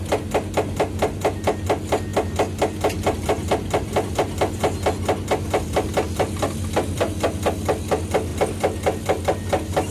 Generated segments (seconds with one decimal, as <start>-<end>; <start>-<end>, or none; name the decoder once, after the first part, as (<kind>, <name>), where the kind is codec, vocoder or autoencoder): none